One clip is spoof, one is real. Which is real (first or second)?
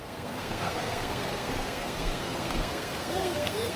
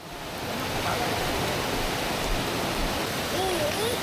second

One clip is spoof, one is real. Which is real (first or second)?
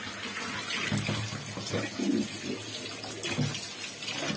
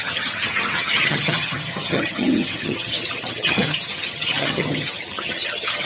first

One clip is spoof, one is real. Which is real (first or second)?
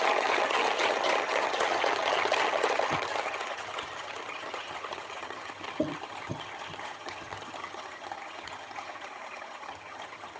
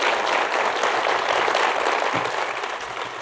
second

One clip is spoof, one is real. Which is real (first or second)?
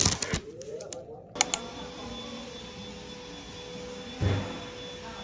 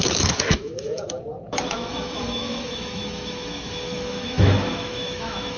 first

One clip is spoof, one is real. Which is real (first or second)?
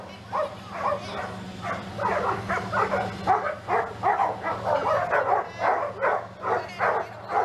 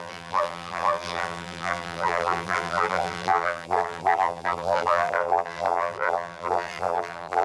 first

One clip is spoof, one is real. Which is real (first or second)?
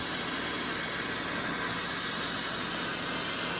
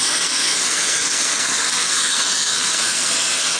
first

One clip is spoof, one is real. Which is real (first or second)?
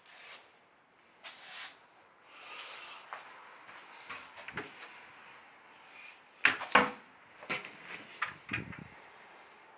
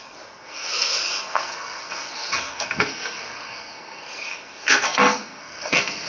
first